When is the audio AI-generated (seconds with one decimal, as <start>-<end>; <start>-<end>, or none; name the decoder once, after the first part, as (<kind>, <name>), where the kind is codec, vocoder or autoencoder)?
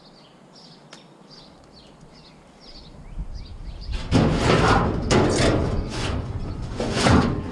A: 5.6-7.5 (vocoder, Vocos)